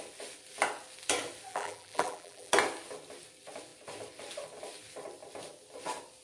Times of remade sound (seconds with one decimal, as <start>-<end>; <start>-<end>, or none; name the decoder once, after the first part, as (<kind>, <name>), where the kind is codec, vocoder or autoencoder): 1.5-2.5 (vocoder, BigVGAN v2)